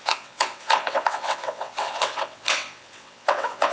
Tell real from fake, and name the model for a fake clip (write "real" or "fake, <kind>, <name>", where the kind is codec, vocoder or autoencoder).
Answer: fake, vocoder, WaveNeXt